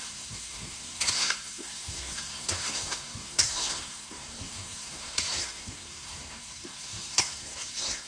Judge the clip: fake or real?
fake